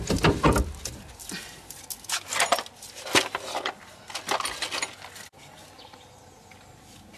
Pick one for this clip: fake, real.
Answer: real